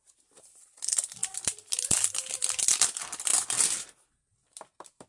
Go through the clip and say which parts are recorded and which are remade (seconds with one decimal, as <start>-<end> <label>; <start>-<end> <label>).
0.0-1.2 recorded; 1.2-2.3 remade; 2.3-3.3 recorded; 3.3-3.9 remade; 3.9-5.1 recorded

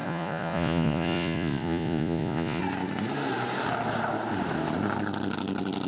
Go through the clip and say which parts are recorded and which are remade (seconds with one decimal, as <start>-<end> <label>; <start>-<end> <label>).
0.0-2.6 remade; 2.6-5.9 recorded

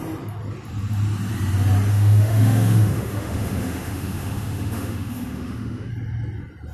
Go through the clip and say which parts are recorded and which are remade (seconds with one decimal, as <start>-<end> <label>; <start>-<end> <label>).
0.0-1.9 recorded; 1.9-5.9 remade; 5.9-6.7 recorded

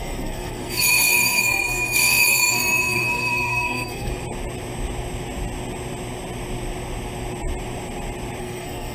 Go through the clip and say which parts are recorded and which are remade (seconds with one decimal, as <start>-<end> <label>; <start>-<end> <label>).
0.0-4.1 remade; 4.1-8.4 recorded; 8.4-8.9 remade